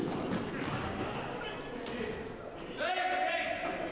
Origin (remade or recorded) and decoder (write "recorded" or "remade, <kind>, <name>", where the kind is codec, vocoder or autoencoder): recorded